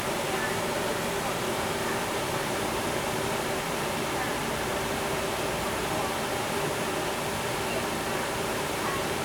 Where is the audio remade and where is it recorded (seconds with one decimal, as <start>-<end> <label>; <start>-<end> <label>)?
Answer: 0.0-9.2 remade